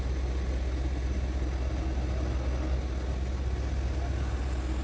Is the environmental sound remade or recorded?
recorded